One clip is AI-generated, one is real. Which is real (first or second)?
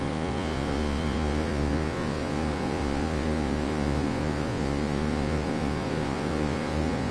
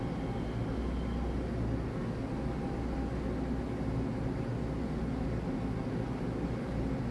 second